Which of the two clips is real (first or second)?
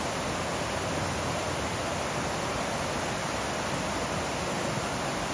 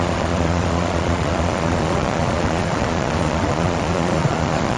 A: first